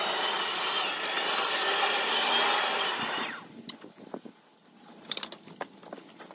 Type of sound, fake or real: fake